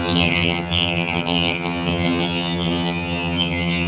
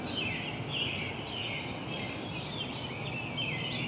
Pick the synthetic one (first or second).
first